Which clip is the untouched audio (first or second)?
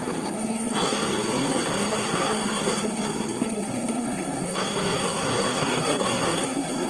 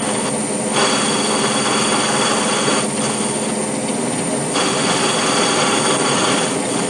second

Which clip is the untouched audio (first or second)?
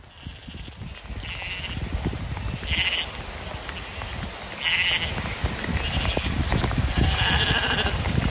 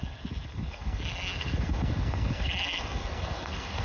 first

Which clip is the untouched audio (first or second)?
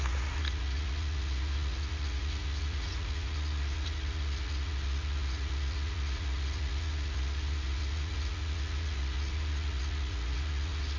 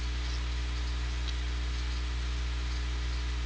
second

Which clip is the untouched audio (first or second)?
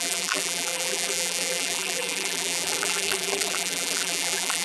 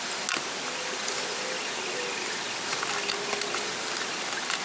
second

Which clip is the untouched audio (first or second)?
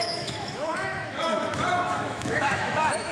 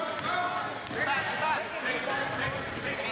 second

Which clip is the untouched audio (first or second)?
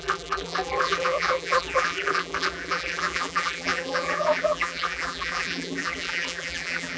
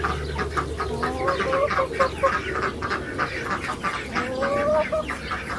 second